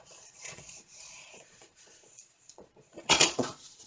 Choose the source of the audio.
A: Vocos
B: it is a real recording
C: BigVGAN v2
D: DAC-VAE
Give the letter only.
A